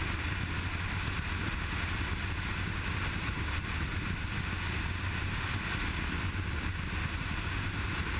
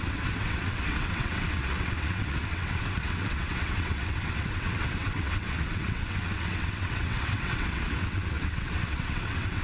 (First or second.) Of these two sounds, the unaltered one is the first